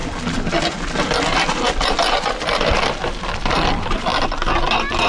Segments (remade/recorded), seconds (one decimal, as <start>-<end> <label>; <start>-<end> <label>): 0.0-5.1 recorded